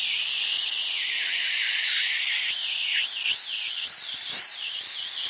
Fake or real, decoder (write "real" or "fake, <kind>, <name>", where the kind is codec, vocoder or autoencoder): real